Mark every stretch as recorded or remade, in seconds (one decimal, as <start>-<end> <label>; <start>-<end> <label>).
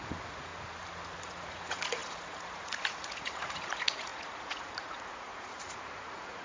0.0-0.5 remade; 0.5-1.2 recorded; 1.2-6.4 remade